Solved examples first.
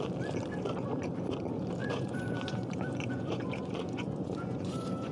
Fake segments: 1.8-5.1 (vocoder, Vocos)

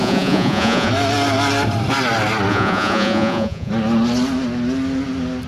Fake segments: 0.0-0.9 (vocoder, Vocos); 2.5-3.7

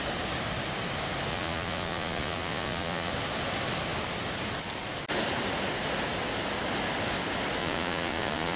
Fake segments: 1.3-3.1 (vocoder, Vocos); 7.6-8.6

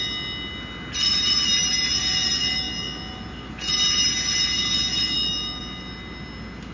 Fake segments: none